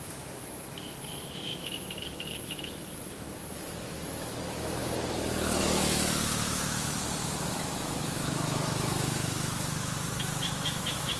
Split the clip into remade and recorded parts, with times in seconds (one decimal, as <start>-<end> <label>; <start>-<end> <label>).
0.0-4.8 remade; 4.8-5.6 recorded; 5.6-11.2 remade